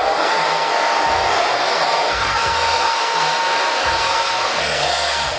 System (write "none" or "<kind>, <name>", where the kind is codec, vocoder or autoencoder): codec, SNAC